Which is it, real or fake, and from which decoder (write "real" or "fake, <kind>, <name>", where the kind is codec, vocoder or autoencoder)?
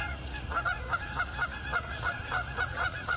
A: fake, vocoder, Vocos